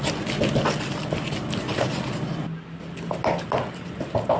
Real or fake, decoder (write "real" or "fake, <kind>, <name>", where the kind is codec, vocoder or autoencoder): real